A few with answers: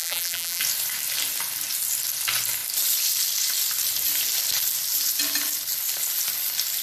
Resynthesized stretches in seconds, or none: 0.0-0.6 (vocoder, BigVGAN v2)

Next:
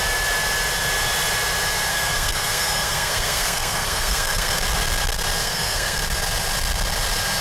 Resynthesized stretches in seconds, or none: 1.9-4.6 (codec, SNAC); 5.4-6.0

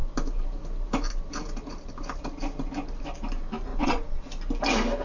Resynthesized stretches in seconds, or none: 3.7-4.3 (vocoder, WaveNeXt)

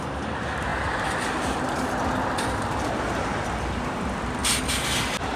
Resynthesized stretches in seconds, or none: none

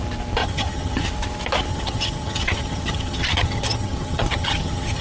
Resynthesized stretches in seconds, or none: 0.4-1.1 (vocoder, HiFi-GAN); 1.7-5.0

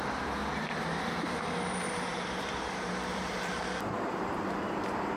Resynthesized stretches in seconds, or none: 0.0-0.4 (vocoder, BigVGAN v2); 1.7-5.2

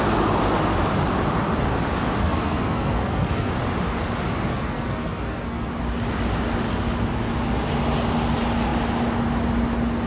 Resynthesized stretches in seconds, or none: 2.2-3.5 (codec, SNAC); 4.5-5.7

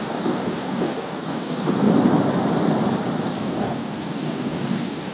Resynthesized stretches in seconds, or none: 0.0-1.9 (codec, DAC); 3.4-5.1